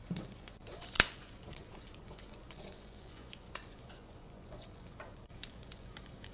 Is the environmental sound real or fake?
fake